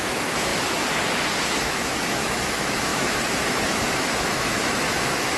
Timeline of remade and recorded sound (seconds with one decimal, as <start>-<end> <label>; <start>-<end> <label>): 0.0-0.5 remade; 0.5-1.6 recorded; 1.6-5.4 remade